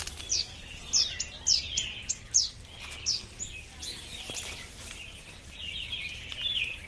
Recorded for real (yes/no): yes